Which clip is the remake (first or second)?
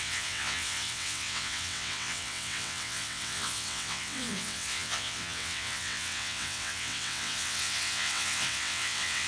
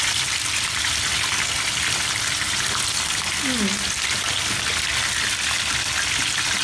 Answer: first